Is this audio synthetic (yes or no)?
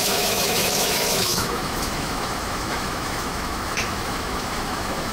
yes